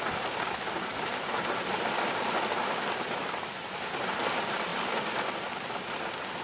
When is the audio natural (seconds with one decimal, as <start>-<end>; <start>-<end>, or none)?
0.0-0.9; 4.0-4.7; 5.3-6.4